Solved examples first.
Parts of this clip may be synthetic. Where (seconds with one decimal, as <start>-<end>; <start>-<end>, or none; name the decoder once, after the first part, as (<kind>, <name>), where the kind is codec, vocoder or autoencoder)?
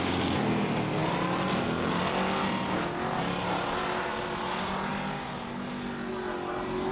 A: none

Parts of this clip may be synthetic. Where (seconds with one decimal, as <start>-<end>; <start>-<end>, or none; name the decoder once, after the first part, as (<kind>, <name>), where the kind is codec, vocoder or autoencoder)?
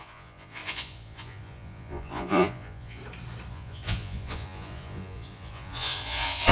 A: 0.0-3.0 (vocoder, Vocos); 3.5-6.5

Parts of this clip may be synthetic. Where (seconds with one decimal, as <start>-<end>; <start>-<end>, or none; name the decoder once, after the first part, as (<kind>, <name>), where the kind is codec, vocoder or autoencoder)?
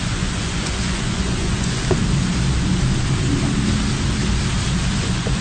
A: 0.0-1.8 (vocoder, Vocos); 5.0-5.4